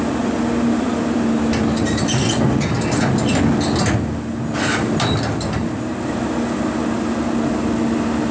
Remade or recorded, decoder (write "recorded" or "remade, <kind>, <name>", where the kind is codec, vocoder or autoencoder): recorded